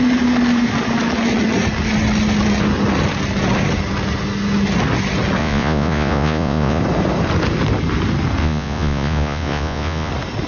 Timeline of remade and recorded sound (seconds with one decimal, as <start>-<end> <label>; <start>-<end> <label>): 0.0-5.4 recorded; 5.4-6.8 remade; 6.8-8.4 recorded; 8.4-10.1 remade; 10.1-10.5 recorded